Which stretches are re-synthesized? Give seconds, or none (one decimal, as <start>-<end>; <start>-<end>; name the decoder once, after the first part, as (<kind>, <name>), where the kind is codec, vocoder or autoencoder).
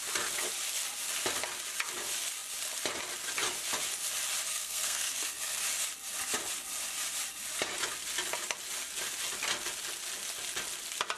4.5-5.6 (codec, SNAC)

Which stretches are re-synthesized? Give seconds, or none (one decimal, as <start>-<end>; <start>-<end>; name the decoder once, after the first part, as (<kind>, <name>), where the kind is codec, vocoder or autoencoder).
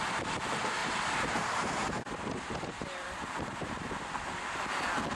0.8-3.9 (vocoder, BigVGAN v2)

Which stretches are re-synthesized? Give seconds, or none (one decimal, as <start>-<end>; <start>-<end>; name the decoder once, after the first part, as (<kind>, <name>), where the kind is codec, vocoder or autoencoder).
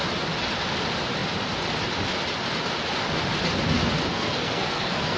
4.1-5.2 (codec, SNAC)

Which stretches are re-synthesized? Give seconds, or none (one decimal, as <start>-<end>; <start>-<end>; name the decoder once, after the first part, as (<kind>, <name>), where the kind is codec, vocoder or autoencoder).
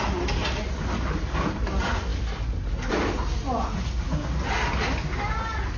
none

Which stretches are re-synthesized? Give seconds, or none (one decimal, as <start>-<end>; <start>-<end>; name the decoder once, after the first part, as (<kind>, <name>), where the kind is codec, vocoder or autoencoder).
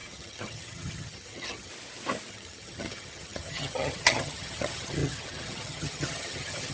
0.0-1.7 (vocoder, HiFi-GAN); 2.3-6.7